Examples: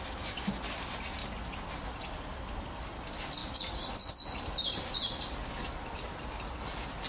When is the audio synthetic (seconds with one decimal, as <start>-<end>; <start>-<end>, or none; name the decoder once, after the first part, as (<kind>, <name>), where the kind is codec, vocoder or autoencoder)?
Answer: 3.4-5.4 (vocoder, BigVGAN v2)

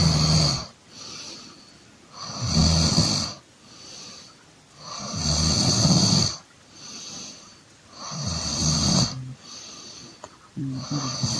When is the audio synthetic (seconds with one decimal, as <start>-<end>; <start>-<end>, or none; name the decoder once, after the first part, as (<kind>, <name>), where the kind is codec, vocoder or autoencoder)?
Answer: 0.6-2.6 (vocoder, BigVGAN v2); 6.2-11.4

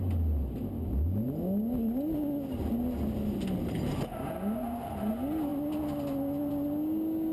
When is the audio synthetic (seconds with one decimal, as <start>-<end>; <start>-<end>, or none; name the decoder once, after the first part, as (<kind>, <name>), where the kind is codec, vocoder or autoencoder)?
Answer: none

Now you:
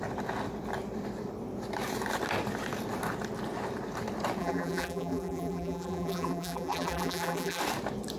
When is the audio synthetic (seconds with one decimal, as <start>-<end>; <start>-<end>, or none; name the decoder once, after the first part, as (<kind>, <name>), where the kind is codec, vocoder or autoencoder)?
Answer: 4.4-7.6 (vocoder, BigVGAN v2)

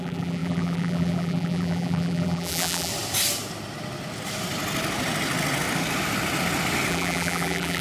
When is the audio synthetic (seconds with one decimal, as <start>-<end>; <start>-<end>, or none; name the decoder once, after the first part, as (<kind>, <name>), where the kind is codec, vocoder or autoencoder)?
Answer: 0.0-2.9 (vocoder, BigVGAN v2); 6.9-7.8

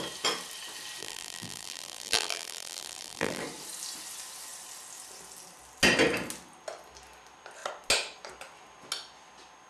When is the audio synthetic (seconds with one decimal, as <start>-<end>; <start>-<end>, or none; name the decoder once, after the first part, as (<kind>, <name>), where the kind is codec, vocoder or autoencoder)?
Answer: 1.0-3.4 (vocoder, BigVGAN v2)

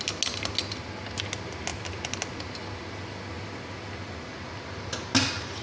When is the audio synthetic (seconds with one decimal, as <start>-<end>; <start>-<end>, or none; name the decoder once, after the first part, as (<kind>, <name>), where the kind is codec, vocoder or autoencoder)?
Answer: none

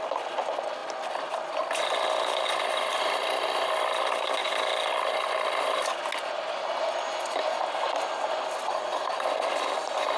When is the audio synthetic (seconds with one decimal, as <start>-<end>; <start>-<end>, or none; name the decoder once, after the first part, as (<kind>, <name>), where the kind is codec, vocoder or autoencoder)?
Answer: none